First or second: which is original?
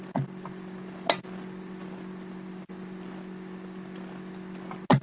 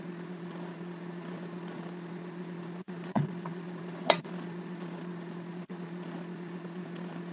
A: first